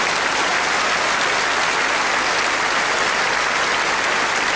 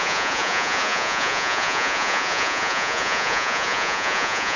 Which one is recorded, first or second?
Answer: first